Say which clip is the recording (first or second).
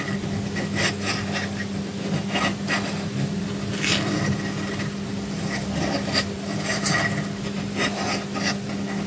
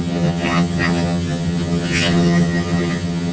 first